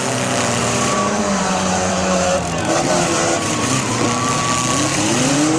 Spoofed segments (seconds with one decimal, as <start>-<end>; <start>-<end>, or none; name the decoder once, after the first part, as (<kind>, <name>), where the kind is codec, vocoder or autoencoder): 0.6-4.0 (vocoder, BigVGAN v2); 4.9-5.6